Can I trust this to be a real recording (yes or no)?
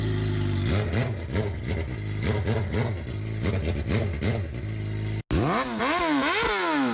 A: yes